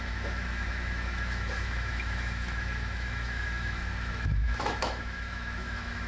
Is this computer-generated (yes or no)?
yes